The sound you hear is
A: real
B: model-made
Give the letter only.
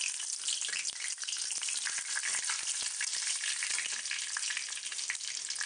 A